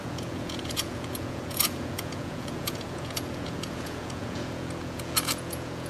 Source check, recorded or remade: remade